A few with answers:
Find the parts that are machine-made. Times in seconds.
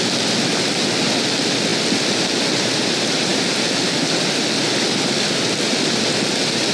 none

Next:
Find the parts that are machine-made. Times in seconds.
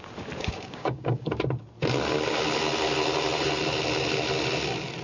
0.4-1.3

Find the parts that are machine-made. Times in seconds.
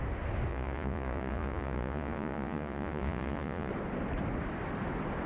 0.5-3.7